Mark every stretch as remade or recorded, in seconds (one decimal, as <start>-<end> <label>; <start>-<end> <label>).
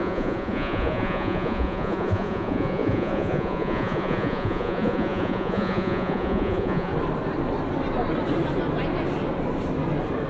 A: 0.0-6.9 remade; 6.9-10.3 recorded